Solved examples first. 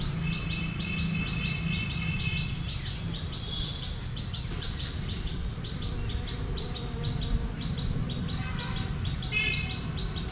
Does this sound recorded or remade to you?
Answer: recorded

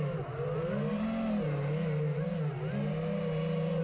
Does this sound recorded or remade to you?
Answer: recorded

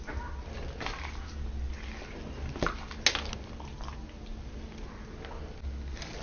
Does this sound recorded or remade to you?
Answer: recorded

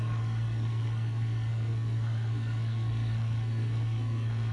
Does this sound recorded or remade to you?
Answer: remade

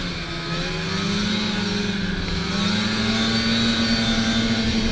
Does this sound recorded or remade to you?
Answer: recorded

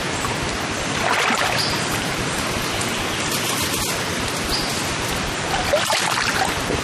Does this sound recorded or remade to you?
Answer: recorded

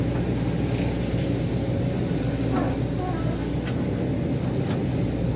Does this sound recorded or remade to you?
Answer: recorded